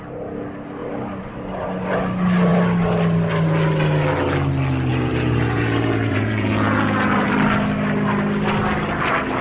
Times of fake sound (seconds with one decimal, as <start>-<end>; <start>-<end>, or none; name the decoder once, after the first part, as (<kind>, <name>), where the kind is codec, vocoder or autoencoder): 4.9-7.3 (vocoder, Vocos)

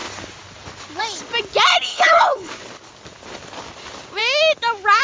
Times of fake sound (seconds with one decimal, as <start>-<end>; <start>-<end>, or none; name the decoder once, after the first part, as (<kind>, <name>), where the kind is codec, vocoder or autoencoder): 1.9-2.5 (codec, HILCodec)

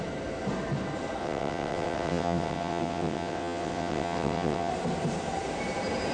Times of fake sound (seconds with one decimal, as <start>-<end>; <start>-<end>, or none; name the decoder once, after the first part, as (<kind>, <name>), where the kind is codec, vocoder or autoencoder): 1.2-4.7 (vocoder, WaveNeXt)

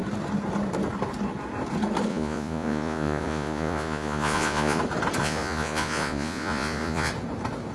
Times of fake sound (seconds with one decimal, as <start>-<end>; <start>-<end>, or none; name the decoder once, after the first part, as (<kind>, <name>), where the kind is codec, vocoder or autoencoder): 2.1-4.8 (vocoder, Vocos); 5.2-7.1

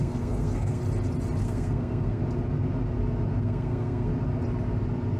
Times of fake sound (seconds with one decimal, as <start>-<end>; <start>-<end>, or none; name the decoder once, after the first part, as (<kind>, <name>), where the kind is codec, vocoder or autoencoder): 0.0-0.8 (codec, SNAC); 1.4-2.2; 3.4-4.1

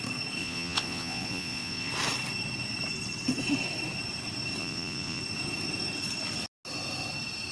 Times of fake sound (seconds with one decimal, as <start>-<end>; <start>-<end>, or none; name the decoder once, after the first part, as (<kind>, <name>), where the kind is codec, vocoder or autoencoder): 0.4-1.9 (vocoder, Vocos); 4.6-5.2

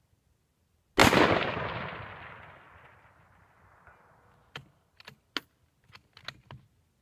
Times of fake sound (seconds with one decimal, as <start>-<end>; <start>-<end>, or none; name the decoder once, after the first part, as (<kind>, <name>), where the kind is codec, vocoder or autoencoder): none